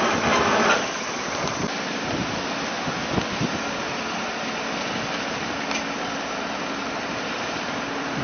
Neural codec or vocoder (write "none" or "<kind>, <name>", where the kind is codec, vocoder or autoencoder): none